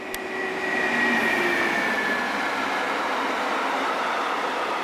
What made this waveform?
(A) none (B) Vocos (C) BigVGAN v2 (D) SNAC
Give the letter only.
A